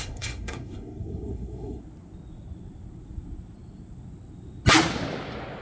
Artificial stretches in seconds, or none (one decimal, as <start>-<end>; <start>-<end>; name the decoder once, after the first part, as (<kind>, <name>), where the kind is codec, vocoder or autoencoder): 0.0-1.8 (codec, SNAC)